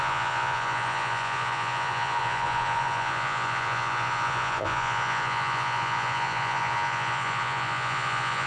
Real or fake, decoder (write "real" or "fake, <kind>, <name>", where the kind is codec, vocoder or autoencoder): fake, vocoder, Vocos